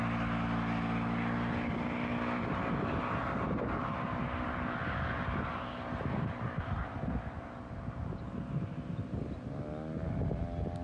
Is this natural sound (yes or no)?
yes